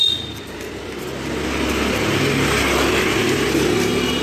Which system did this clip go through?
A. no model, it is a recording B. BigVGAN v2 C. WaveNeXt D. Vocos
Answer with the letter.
A